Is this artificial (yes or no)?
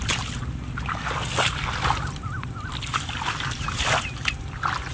no